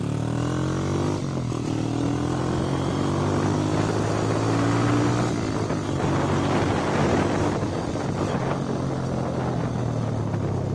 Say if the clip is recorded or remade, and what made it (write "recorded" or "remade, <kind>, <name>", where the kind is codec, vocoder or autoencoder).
recorded